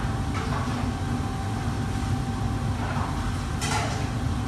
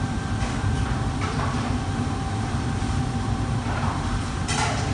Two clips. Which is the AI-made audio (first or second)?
second